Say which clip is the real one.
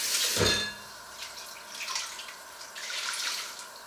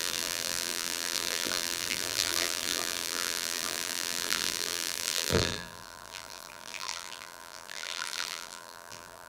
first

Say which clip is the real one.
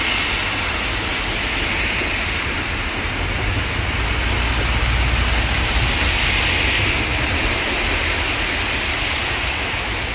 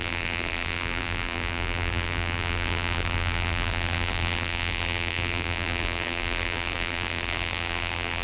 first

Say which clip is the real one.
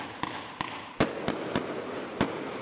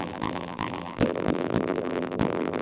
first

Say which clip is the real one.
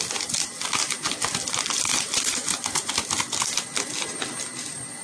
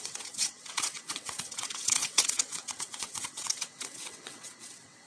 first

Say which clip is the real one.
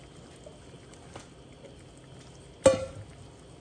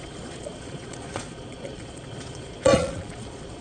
first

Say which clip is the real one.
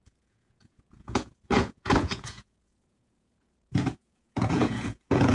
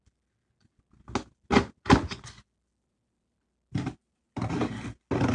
second